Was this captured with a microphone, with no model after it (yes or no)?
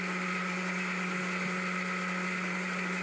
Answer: yes